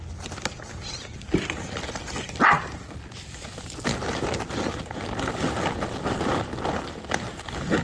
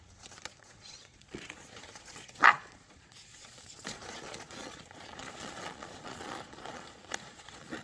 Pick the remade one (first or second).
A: second